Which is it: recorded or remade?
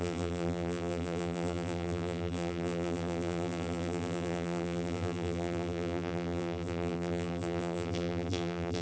remade